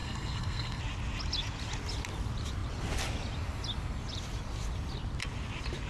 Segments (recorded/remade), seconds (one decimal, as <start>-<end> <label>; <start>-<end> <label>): 0.0-0.8 remade; 0.8-5.9 recorded